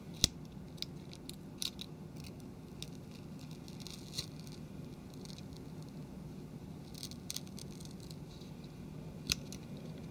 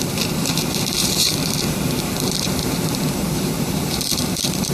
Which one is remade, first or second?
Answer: second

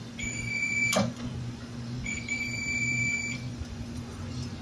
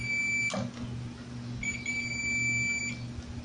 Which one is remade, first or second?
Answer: first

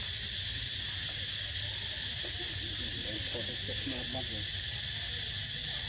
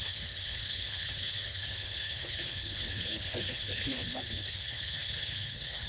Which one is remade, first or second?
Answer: second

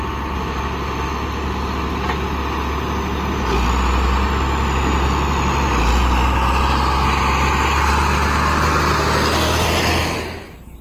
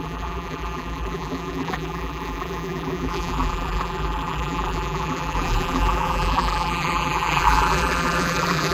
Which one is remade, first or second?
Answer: second